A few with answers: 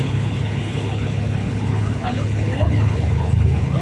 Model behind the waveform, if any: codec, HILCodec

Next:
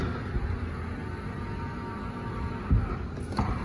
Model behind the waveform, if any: none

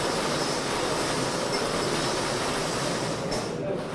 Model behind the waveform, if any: none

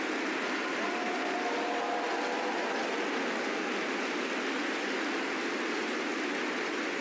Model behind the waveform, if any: none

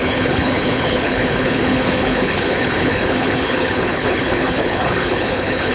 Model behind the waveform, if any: codec, HILCodec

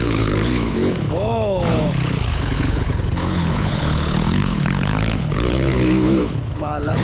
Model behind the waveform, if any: codec, HILCodec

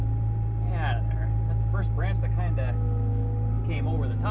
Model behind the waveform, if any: none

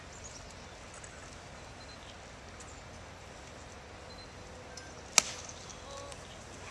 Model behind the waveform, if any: none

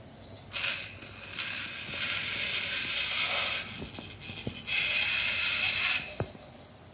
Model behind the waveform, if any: none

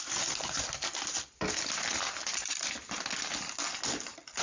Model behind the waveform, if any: none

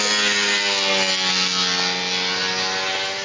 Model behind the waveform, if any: none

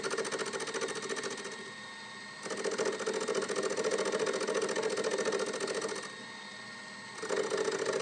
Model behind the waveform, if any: none